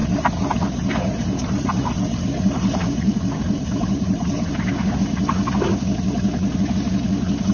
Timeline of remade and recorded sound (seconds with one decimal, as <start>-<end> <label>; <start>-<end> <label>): 0.0-4.5 remade; 4.5-7.5 recorded